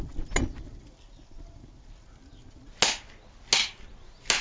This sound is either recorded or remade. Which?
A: recorded